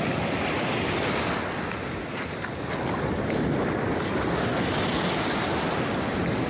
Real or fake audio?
real